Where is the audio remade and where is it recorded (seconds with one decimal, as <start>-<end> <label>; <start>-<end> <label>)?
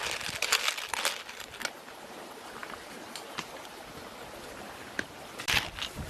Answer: 0.0-6.1 recorded